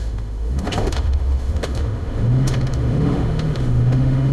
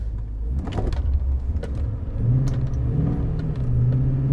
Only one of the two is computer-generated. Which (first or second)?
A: first